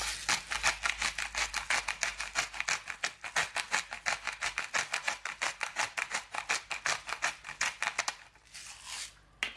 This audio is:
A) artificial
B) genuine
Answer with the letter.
B